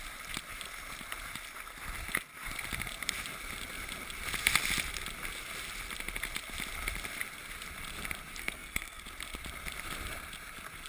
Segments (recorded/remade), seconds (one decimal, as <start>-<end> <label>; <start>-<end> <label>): 0.0-8.4 recorded; 8.4-9.0 remade; 9.0-10.9 recorded